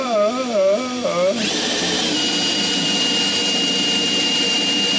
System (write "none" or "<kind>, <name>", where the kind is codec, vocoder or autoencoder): vocoder, BigVGAN v2